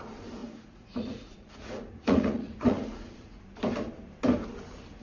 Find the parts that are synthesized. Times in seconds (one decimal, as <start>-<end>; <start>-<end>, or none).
0.4-3.4